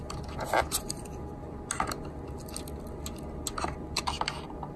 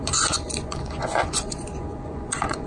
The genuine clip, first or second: first